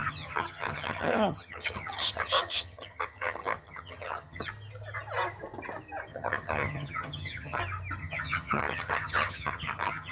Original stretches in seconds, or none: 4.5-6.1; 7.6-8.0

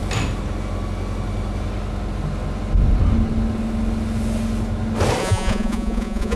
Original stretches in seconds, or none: 0.0-5.2

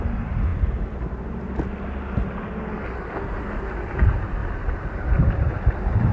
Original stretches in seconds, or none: 0.5-3.3; 4.4-5.2

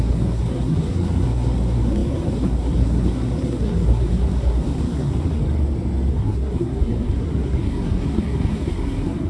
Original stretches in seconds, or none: 5.4-6.1

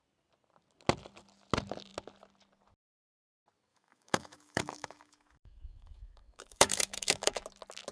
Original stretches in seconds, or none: 0.0-3.7; 7.4-7.9

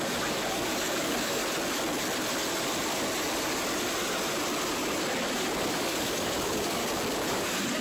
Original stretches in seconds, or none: 1.4-5.6; 6.8-7.3